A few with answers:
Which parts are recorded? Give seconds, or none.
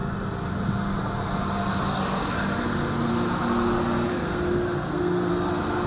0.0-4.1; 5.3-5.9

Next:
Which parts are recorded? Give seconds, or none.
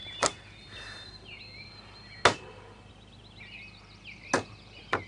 0.0-5.1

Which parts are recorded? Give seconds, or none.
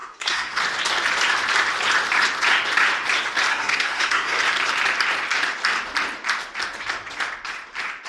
0.6-3.5; 4.4-8.1